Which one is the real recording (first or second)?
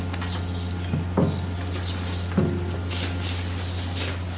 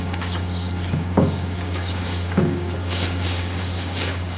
first